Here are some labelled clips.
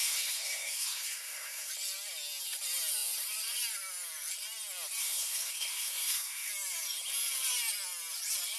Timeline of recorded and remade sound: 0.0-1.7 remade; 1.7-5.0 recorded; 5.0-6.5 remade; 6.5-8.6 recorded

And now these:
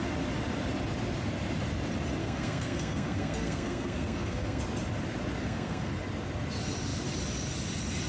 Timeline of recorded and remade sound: 0.0-2.2 recorded; 2.2-4.6 remade; 4.6-5.4 recorded; 5.4-5.9 remade; 5.9-8.1 recorded

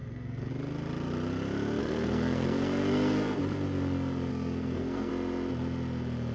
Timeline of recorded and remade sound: 0.0-0.5 remade; 0.5-1.8 recorded; 1.8-3.4 remade; 3.4-4.3 recorded; 4.3-5.1 remade; 5.1-6.3 recorded

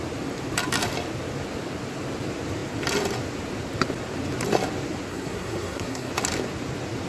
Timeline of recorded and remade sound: 0.0-5.1 recorded; 5.1-6.1 remade; 6.1-7.1 recorded

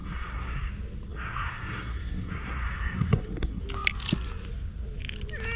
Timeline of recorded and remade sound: 0.0-0.7 remade; 0.7-1.1 recorded; 1.1-3.6 remade; 3.6-5.6 recorded

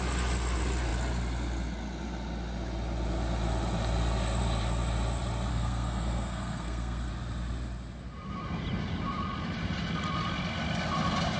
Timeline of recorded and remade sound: 0.0-5.5 recorded; 5.5-7.1 remade; 7.1-11.4 recorded

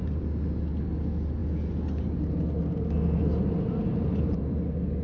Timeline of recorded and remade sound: 0.0-5.0 recorded